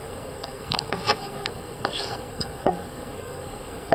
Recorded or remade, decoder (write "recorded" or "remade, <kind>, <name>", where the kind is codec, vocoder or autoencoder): remade, codec, SNAC